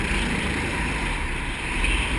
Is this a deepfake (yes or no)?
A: yes